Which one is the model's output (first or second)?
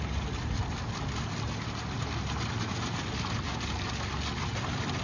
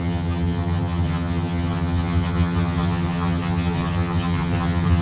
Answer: second